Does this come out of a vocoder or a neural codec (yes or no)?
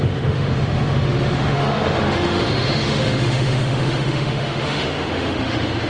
yes